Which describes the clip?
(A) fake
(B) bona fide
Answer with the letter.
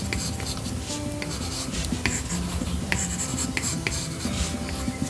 B